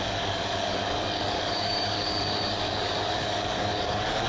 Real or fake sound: fake